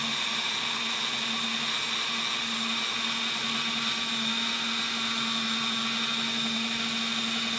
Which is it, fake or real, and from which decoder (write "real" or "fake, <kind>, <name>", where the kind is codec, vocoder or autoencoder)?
real